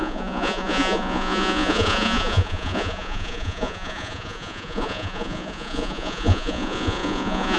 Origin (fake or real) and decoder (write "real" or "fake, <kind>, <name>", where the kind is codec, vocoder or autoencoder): fake, vocoder, Vocos